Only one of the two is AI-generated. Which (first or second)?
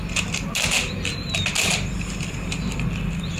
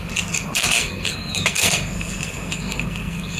second